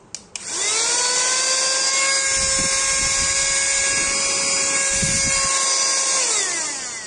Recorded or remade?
recorded